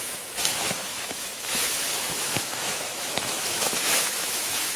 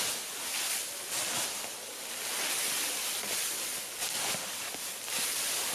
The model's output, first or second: first